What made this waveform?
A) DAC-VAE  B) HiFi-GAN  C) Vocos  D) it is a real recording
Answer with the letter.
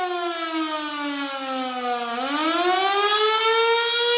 D